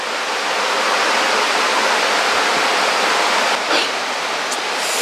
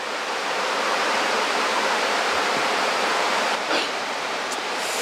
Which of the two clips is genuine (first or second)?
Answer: first